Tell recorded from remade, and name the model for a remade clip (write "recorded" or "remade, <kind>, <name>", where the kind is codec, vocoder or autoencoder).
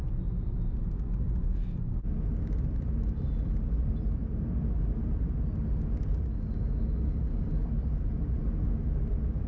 recorded